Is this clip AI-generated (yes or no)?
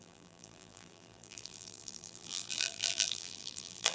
yes